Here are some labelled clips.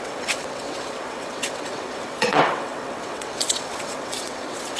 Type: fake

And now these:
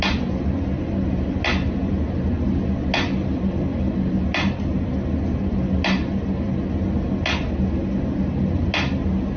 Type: real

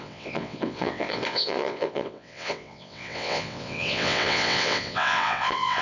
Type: fake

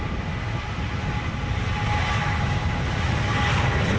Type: real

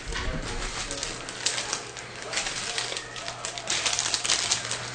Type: real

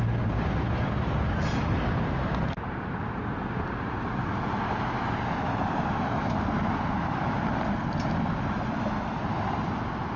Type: real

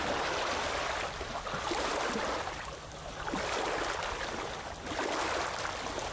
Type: real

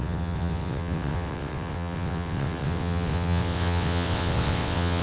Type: fake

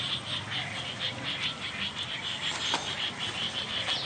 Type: real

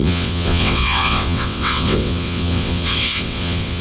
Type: fake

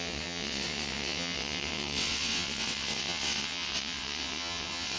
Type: fake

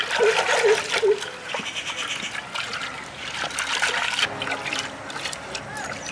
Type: real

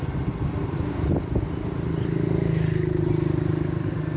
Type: real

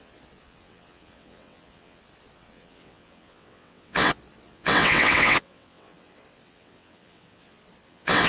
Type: fake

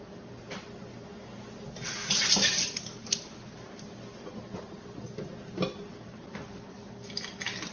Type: real